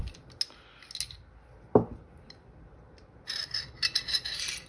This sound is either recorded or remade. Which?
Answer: recorded